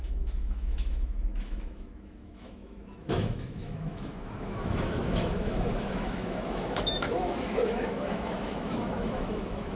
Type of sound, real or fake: fake